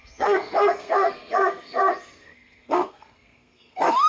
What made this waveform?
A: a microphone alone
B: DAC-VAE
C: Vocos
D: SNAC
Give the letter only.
D